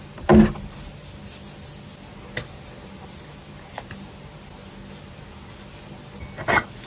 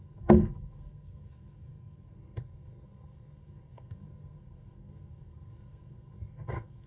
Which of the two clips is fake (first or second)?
second